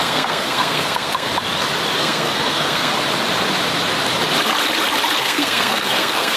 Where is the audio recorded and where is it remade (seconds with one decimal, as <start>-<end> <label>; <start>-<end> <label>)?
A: 0.0-1.3 remade; 1.3-2.0 recorded; 2.0-2.9 remade; 2.9-5.2 recorded; 5.2-6.4 remade